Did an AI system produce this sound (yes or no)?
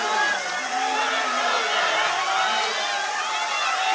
no